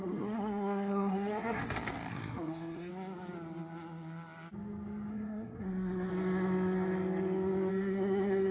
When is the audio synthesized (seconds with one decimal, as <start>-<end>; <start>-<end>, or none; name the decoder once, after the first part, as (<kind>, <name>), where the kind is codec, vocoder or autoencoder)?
0.0-1.6 (codec, SNAC); 2.1-2.9; 5.1-6.1; 7.7-8.5